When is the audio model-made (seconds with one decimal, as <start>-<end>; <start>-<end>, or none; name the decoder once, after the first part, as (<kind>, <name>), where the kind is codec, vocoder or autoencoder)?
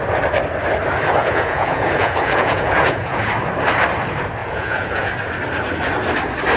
1.2-3.2 (vocoder, Vocos); 4.4-5.1